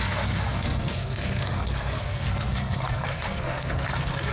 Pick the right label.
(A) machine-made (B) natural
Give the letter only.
A